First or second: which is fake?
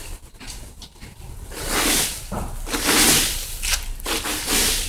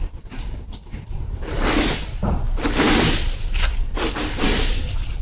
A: second